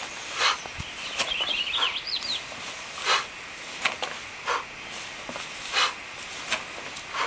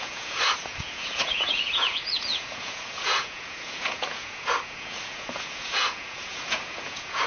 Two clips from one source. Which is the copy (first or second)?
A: second